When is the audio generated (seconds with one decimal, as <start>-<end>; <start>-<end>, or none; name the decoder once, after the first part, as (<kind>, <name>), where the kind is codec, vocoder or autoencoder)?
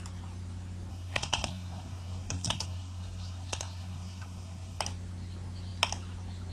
0.9-4.8 (codec, SNAC)